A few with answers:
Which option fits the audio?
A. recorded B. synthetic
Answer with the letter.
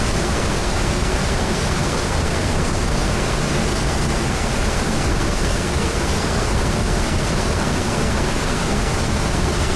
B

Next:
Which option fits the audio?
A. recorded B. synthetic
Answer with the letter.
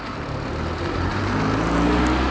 A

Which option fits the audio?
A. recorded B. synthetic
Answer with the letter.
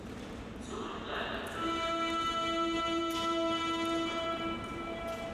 B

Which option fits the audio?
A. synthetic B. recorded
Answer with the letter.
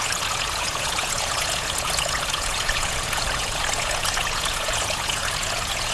A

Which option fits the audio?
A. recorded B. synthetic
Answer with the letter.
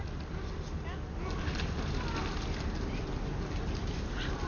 A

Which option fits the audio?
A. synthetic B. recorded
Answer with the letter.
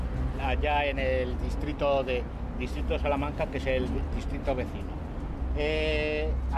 B